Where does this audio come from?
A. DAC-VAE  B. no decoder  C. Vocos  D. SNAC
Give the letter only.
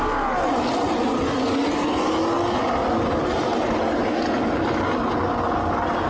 B